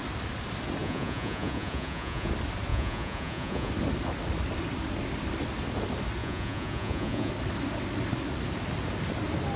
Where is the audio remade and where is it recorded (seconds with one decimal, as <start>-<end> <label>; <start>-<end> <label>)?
0.0-0.8 recorded; 0.8-2.3 remade; 2.3-2.7 recorded; 2.7-3.7 remade; 3.7-6.2 recorded; 6.2-7.3 remade; 7.3-9.6 recorded